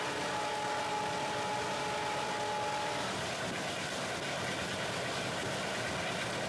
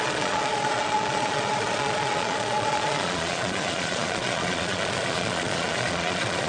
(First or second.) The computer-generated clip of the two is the second